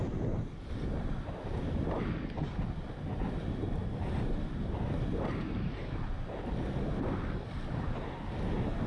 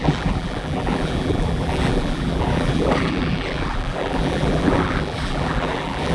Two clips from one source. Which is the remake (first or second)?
second